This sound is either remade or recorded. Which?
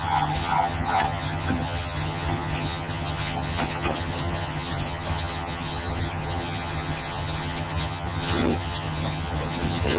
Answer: remade